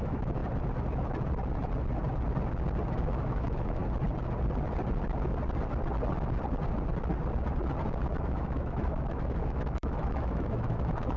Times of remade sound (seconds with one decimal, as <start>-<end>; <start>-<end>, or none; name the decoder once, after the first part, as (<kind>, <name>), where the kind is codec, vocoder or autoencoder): 0.0-0.4 (autoencoder, DAC-VAE); 2.9-3.8; 8.2-11.2